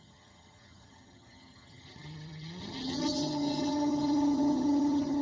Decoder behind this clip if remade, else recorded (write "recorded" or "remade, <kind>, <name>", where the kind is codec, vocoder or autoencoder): remade, vocoder, HiFi-GAN